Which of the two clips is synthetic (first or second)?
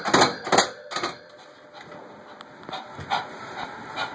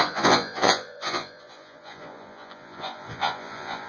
second